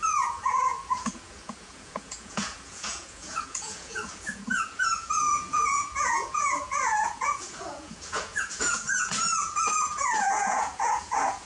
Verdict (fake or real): fake